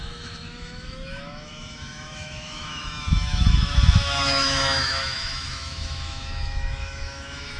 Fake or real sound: fake